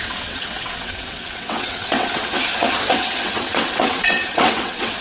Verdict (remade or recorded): remade